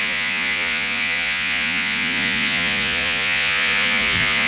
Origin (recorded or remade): remade